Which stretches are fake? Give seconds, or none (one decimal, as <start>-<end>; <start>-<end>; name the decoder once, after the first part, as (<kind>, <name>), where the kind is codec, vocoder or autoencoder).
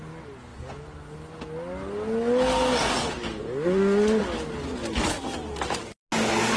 none